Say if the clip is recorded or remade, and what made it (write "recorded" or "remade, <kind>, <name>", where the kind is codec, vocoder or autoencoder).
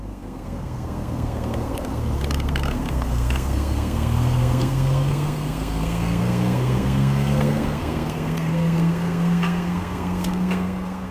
remade, codec, SNAC